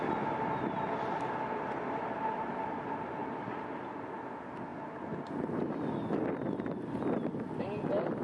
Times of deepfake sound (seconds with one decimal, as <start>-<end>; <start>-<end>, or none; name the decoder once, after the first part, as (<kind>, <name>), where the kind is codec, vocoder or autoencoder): none